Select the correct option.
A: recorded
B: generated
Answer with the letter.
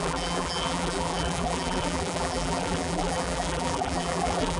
B